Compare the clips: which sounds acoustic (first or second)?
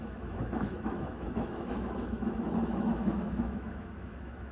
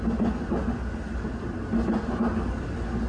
second